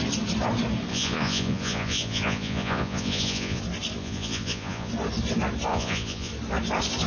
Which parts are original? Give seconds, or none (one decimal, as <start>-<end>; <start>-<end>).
0.0-0.9; 3.6-4.0; 4.9-5.7; 6.3-7.1